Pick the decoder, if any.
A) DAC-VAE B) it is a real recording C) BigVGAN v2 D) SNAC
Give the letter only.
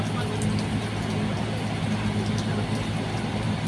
B